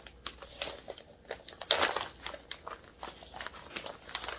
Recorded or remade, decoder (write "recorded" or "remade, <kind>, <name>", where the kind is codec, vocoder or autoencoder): recorded